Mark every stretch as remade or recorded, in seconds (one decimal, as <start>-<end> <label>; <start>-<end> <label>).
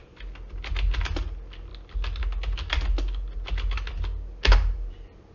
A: 0.0-5.3 recorded